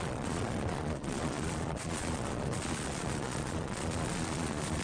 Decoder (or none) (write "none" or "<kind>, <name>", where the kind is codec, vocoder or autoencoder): vocoder, Vocos